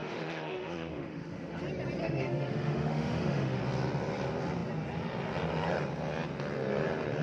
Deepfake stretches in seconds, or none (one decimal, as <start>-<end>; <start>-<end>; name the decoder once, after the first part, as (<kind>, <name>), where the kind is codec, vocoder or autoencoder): 0.0-1.6 (autoencoder, DAC-VAE); 2.0-3.6